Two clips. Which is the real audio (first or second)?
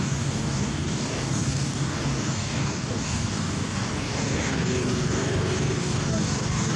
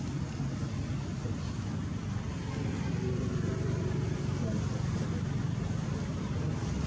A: second